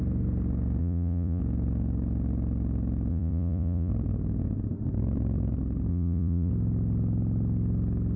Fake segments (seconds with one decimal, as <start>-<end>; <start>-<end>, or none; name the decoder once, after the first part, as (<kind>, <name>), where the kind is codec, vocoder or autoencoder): 0.8-1.4 (vocoder, Vocos); 3.1-3.9; 5.9-6.5